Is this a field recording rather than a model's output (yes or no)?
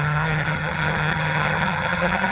no